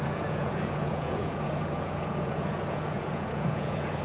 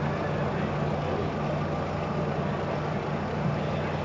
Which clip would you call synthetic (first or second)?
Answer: first